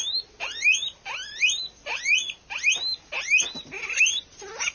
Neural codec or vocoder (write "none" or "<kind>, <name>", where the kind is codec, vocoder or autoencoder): none